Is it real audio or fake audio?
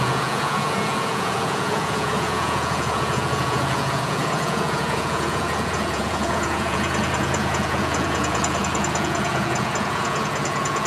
fake